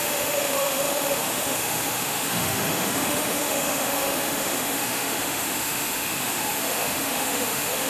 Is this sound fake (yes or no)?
yes